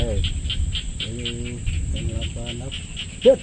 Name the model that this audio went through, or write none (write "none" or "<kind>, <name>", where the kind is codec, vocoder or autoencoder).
none